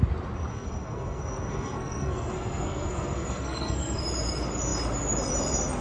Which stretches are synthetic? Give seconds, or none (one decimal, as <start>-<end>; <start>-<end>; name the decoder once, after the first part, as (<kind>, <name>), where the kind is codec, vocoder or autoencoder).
0.5-4.0 (codec, SNAC)